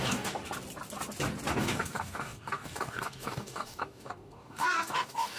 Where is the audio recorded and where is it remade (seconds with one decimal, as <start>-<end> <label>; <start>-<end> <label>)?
0.0-0.4 remade; 0.4-1.5 recorded; 1.5-5.4 remade